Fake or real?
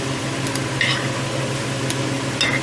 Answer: real